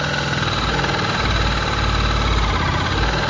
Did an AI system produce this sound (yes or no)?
no